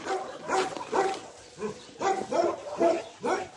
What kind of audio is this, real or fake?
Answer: real